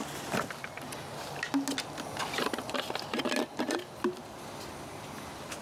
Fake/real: real